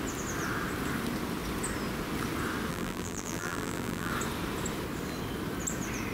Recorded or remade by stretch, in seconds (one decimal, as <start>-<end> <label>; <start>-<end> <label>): 0.0-2.7 recorded; 2.7-4.1 remade; 4.1-6.1 recorded